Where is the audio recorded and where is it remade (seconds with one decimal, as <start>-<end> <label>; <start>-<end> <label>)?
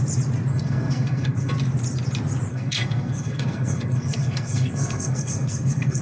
0.0-0.5 recorded; 0.5-1.5 remade; 1.5-2.5 recorded; 2.5-6.0 remade